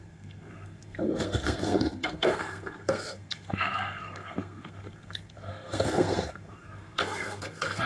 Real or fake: fake